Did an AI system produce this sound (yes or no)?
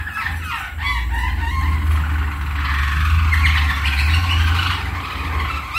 no